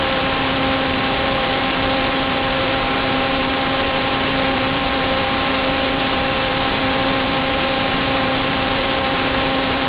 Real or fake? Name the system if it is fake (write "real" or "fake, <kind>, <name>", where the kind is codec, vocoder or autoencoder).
fake, vocoder, BigVGAN v2